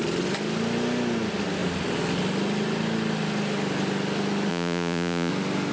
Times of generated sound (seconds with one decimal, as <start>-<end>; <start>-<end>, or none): 4.5-5.3